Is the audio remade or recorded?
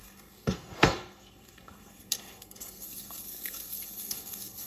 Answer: remade